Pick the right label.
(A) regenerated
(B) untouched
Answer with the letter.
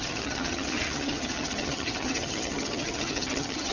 A